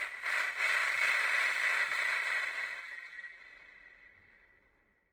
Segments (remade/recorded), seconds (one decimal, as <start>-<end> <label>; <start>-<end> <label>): 0.0-2.8 recorded; 2.8-3.4 remade; 3.4-5.1 recorded

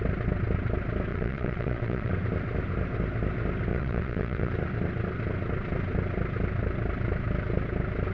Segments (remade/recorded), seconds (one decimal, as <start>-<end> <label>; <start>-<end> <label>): 0.0-1.1 recorded; 1.1-2.1 remade; 2.1-3.7 recorded; 3.7-4.5 remade; 4.5-8.1 recorded

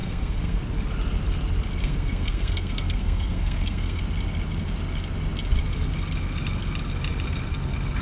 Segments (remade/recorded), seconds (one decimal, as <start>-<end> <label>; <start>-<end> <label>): 0.0-0.6 remade; 0.6-1.8 recorded; 1.8-4.0 remade; 4.0-8.0 recorded

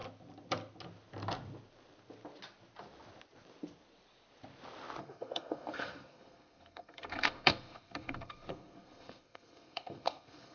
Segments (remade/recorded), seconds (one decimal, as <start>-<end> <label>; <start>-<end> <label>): 0.0-5.0 recorded; 5.0-10.5 remade

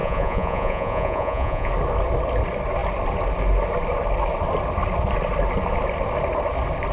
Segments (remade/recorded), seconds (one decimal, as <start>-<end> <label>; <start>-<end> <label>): 0.0-1.7 remade; 1.7-6.9 recorded

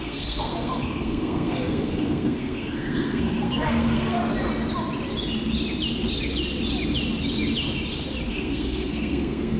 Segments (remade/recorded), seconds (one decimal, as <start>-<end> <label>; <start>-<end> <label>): 0.0-4.2 remade; 4.2-8.3 recorded; 8.3-9.6 remade

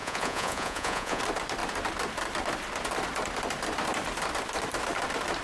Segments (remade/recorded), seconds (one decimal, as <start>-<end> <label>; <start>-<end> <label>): 0.0-1.2 remade; 1.2-5.4 recorded

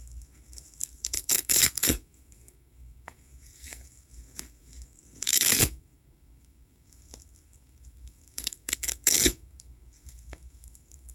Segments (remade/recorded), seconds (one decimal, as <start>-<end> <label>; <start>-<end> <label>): 0.0-11.1 remade